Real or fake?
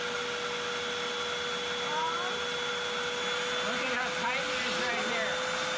real